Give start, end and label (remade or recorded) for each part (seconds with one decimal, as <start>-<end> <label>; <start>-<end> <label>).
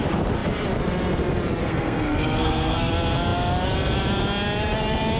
0.0-1.6 recorded; 1.6-2.9 remade; 2.9-5.2 recorded